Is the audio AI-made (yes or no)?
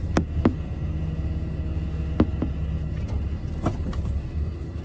no